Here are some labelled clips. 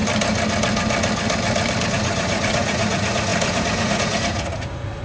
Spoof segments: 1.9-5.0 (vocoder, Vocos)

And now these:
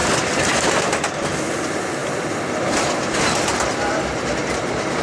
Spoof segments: none